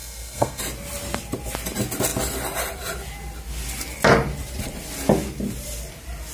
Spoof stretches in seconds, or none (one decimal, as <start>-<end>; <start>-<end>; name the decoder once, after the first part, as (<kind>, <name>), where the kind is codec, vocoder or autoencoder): 0.0-0.6 (codec, SNAC)